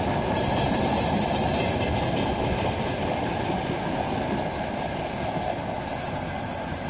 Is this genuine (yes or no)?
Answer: yes